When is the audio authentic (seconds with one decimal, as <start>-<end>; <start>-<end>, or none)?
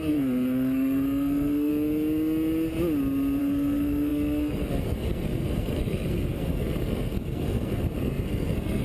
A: 1.7-3.4